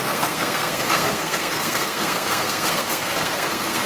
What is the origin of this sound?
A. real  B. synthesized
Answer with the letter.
B